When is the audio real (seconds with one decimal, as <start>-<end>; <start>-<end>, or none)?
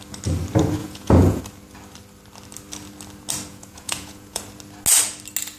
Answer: 0.0-0.8; 1.4-3.5; 4.4-5.6